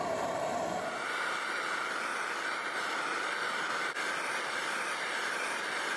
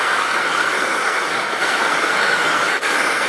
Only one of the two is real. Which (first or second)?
first